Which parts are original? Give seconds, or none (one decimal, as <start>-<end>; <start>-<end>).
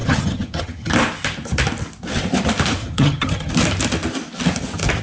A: 0.9-2.8; 3.5-5.0